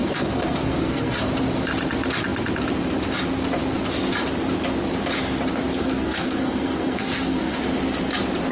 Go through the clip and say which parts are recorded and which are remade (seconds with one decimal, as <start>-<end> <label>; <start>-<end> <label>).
0.0-1.3 remade; 1.3-5.8 recorded; 5.8-7.6 remade; 7.6-8.5 recorded